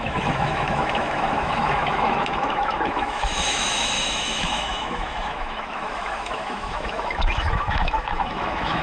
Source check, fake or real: fake